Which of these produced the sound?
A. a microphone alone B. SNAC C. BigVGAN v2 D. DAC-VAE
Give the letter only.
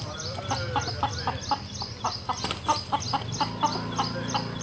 C